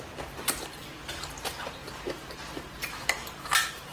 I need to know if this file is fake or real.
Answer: fake